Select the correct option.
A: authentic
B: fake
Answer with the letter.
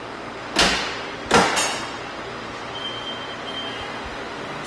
A